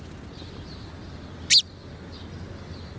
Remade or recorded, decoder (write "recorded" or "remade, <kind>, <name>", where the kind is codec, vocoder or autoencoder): recorded